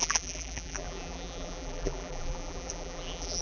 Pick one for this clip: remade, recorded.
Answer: remade